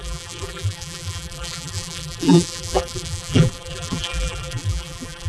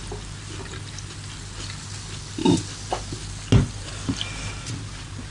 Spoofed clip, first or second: first